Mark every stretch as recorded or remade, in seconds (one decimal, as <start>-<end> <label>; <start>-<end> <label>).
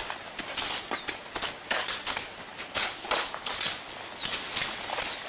0.0-5.3 recorded